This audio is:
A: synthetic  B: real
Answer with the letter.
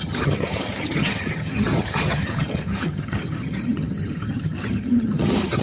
A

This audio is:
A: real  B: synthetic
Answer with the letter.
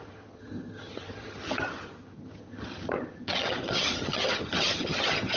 B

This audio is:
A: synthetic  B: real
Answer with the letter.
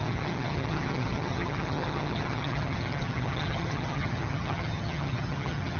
A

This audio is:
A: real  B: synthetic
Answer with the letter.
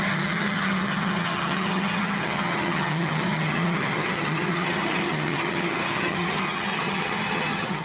B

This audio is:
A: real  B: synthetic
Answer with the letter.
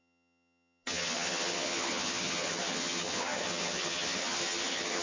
B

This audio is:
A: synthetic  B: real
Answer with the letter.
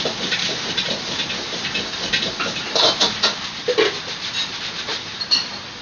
B